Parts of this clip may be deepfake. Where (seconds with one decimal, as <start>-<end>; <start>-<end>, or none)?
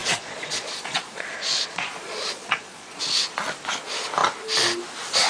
0.0-3.0